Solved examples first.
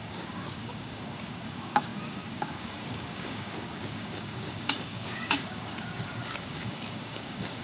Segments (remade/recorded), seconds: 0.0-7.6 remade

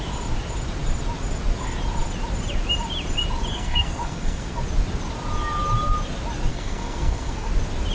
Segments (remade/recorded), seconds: 0.0-3.5 recorded; 3.5-4.6 remade; 4.6-6.5 recorded; 6.5-7.5 remade; 7.5-7.9 recorded

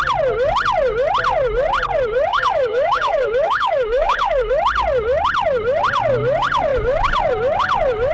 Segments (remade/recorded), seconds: 0.0-2.3 recorded; 2.3-4.5 remade; 4.5-8.1 recorded

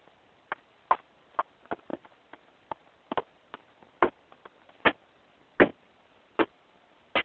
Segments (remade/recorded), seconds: 0.0-7.2 recorded

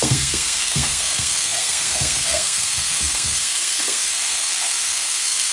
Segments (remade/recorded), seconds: 0.0-5.5 remade